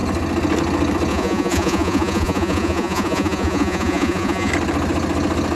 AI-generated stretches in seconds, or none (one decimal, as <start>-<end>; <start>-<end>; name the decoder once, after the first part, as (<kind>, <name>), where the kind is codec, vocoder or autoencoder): 1.1-4.5 (vocoder, Vocos)